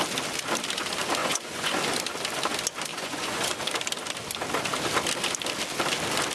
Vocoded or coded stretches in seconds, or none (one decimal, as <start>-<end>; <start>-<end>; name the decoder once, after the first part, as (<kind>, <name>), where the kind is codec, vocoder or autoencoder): 1.2-1.8 (vocoder, Vocos); 2.9-3.6